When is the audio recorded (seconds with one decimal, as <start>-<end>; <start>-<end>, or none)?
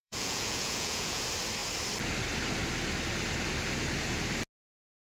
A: 1.2-5.2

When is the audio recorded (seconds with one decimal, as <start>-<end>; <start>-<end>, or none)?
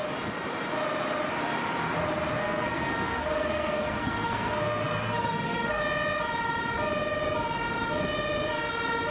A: 0.0-2.4; 5.8-9.1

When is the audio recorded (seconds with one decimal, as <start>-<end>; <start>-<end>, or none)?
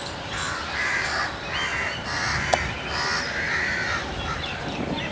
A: 0.0-0.6; 1.2-5.1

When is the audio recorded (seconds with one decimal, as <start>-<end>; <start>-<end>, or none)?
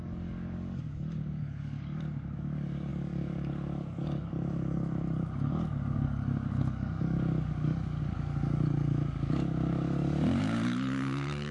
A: none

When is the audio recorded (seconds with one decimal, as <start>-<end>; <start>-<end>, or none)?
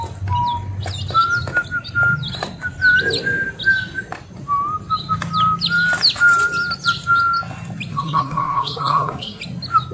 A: 0.0-7.9; 9.4-9.9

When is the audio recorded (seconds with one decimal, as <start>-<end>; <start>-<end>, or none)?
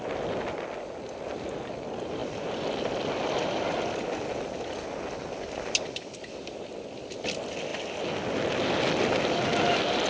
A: 0.0-10.1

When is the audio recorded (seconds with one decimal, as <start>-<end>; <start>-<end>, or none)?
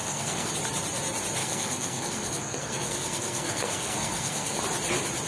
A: 0.5-1.4; 4.6-5.3